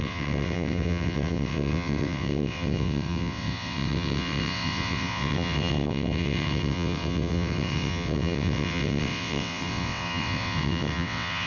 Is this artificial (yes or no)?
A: yes